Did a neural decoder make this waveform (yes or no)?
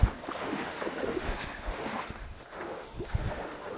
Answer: yes